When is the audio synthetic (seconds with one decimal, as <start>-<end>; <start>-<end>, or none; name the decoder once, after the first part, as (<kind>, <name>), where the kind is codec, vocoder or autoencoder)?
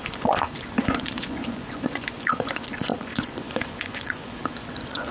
0.0-5.1 (vocoder, Vocos)